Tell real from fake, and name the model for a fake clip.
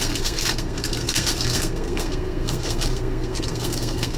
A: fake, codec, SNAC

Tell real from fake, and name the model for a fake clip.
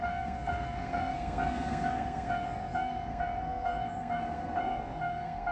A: fake, codec, SNAC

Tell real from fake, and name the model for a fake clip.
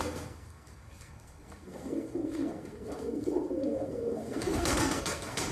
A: fake, codec, SNAC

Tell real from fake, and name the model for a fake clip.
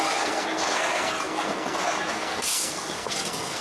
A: fake, codec, SNAC